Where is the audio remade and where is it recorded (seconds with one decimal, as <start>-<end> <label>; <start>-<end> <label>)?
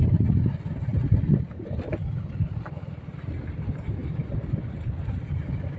0.0-5.8 recorded